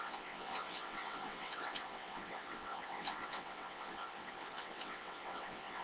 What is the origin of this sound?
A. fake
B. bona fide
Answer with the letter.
A